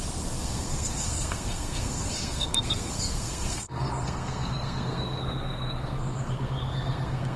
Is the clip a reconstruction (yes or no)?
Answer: yes